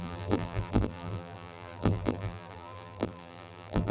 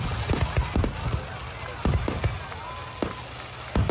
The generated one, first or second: first